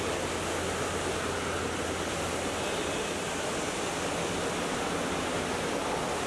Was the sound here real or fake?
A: real